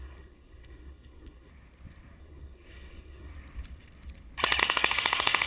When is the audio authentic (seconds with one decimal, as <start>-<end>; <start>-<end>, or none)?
1.5-2.2; 3.3-4.6